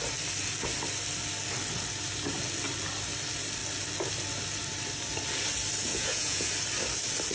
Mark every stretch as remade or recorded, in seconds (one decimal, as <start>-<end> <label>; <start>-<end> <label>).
0.0-5.9 recorded; 5.9-6.5 remade; 6.5-7.3 recorded